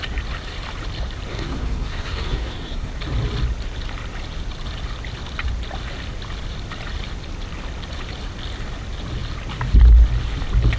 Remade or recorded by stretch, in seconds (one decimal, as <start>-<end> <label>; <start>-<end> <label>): 0.0-1.3 recorded; 1.3-2.9 remade; 2.9-10.8 recorded